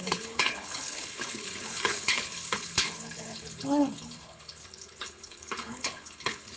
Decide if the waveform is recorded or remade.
remade